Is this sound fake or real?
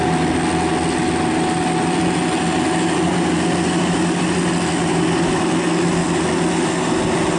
real